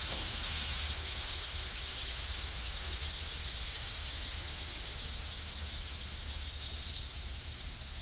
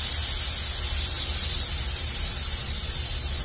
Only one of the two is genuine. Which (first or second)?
second